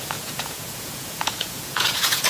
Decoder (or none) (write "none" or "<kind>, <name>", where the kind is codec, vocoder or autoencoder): vocoder, Vocos